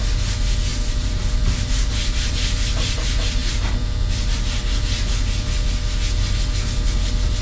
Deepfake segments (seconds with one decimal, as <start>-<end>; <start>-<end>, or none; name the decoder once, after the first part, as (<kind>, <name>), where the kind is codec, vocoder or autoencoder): 0.7-2.3 (vocoder, BigVGAN v2); 3.4-4.6